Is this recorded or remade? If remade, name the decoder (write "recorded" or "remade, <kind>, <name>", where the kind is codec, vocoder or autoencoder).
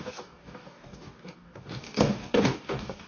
remade, codec, DAC